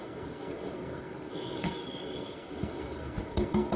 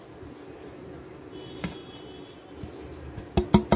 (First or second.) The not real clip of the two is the first